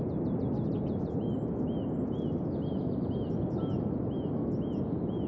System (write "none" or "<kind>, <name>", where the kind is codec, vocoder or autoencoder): none